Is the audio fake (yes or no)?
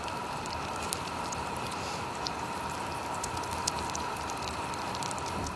yes